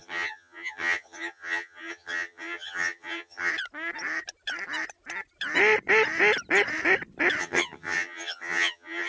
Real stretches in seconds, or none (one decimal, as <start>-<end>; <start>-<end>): 3.5-7.4